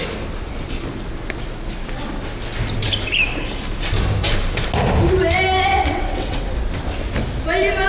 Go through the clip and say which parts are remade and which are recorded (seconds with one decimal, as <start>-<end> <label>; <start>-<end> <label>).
0.0-5.7 recorded; 5.7-6.5 remade; 6.5-7.9 recorded